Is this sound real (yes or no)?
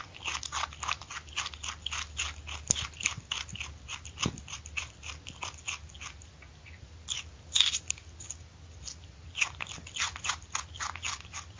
yes